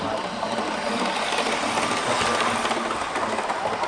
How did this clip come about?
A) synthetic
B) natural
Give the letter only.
B